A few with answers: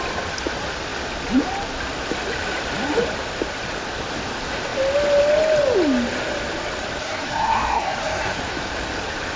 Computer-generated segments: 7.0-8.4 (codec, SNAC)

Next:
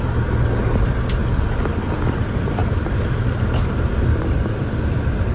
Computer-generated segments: none

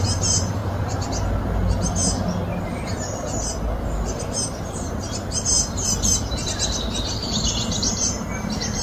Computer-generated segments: 0.0-0.6 (vocoder, BigVGAN v2); 4.2-8.8

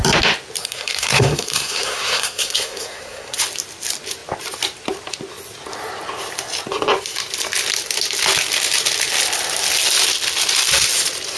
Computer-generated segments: 0.6-3.4 (codec, SNAC)

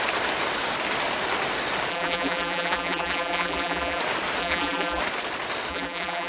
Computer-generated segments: 1.9-4.0 (vocoder, BigVGAN v2); 4.4-5.0; 5.7-6.3